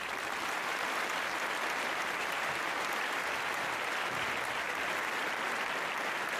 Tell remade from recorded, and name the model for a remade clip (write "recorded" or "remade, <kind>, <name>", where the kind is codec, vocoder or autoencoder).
recorded